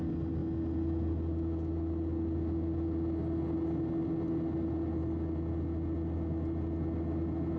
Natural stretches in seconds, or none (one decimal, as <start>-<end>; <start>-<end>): 0.0-7.6

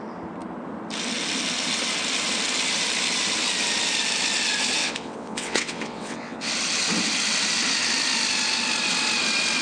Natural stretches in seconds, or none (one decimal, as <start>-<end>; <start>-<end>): 0.0-4.8; 6.5-9.6

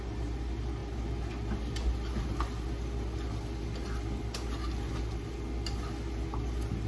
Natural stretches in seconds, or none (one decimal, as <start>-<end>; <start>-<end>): 0.0-6.9

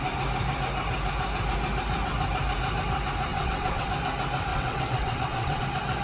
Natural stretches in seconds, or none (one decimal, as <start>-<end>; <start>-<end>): 0.0-3.3; 3.9-4.5; 5.6-6.0

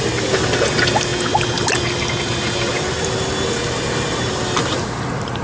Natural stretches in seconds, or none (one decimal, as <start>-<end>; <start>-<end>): 0.0-5.4